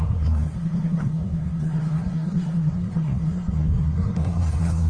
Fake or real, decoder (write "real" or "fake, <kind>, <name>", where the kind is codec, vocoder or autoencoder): fake, codec, SNAC